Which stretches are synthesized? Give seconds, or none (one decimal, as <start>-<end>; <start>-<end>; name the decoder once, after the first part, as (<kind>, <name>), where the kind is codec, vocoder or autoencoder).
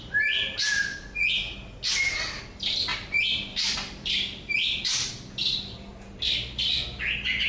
0.8-1.6 (vocoder, BigVGAN v2); 2.9-5.1